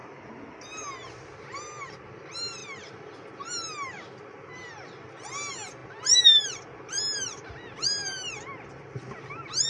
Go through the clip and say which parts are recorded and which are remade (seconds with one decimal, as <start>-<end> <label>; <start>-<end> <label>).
0.0-9.7 recorded